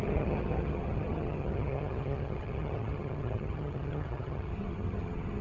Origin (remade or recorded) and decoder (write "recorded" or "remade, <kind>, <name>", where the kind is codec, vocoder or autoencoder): remade, vocoder, HiFi-GAN